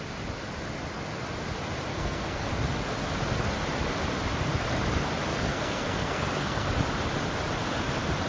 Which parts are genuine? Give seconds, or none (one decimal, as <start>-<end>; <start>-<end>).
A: 0.0-1.9; 2.5-5.3; 6.7-8.3